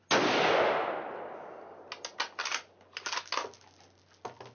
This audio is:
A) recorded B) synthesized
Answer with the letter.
A